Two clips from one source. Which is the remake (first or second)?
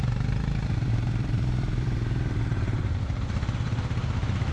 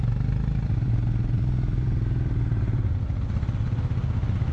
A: first